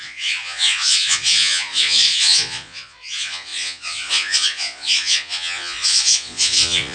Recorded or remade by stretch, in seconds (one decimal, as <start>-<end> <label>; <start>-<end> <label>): 0.0-6.9 remade